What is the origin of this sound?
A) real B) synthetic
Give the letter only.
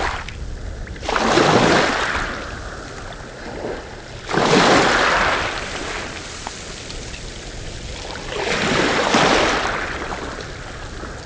A